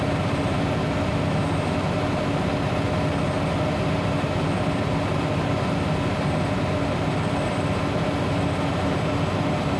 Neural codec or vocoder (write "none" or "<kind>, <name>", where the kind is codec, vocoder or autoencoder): none